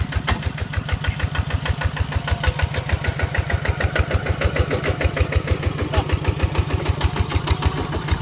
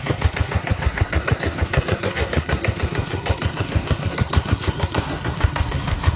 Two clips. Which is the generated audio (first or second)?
second